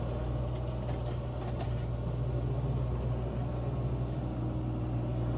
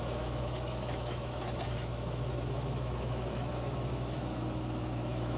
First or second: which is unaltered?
first